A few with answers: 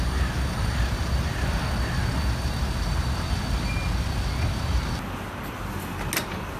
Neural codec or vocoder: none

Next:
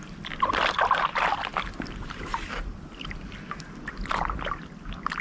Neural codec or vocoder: none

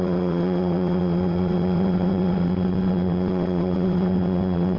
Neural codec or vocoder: vocoder, WaveNeXt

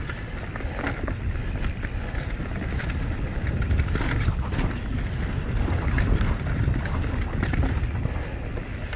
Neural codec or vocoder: none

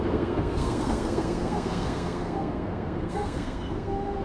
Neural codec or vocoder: codec, SNAC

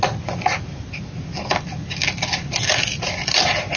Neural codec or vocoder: none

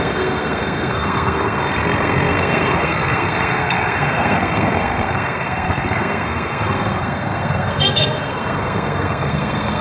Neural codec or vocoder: codec, SNAC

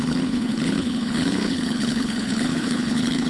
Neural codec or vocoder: codec, HILCodec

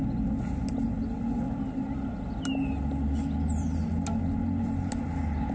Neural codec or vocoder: none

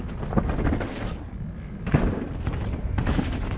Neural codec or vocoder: none